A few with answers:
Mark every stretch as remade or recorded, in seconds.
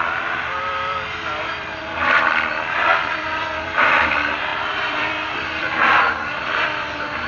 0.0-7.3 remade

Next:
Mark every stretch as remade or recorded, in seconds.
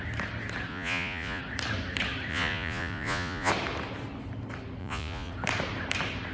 0.0-0.7 recorded; 0.7-1.4 remade; 1.4-2.3 recorded; 2.3-3.5 remade; 3.5-4.8 recorded; 4.8-5.3 remade; 5.3-6.3 recorded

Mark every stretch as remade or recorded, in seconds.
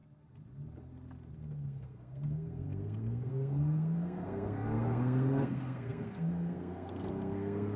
0.0-1.3 recorded; 1.3-7.8 remade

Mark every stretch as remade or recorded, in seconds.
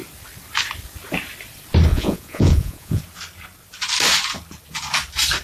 0.0-1.9 recorded; 1.9-3.0 remade; 3.0-5.4 recorded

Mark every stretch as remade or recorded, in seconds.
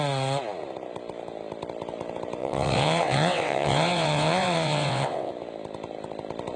0.0-2.4 recorded; 2.4-5.3 remade; 5.3-6.6 recorded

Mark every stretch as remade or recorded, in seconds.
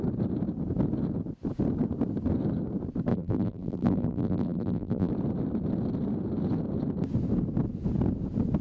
0.0-3.1 recorded; 3.1-5.1 remade; 5.1-8.6 recorded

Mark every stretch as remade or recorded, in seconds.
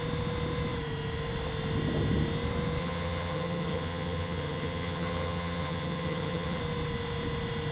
0.0-2.8 recorded; 2.8-6.6 remade; 6.6-7.7 recorded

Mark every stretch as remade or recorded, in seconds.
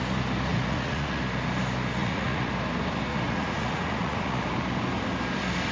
0.0-0.5 recorded; 0.5-1.2 remade; 1.2-2.0 recorded; 2.0-2.5 remade; 2.5-3.1 recorded; 3.1-4.4 remade; 4.4-5.7 recorded